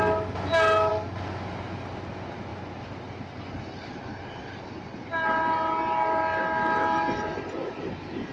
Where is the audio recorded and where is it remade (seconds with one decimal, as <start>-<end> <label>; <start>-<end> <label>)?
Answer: 0.0-8.3 recorded